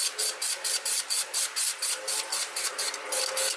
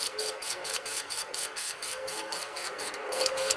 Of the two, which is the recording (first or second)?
first